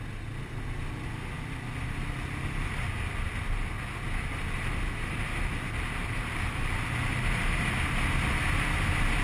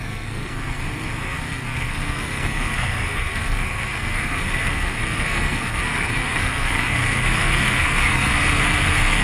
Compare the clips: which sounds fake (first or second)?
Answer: second